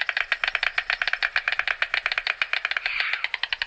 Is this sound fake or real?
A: real